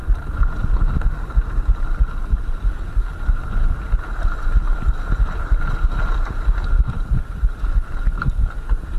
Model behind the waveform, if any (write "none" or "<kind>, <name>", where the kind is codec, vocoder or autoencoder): none